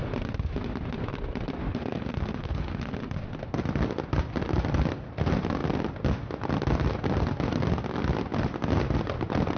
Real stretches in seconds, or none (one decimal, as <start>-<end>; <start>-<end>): 0.0-1.6; 2.8-9.6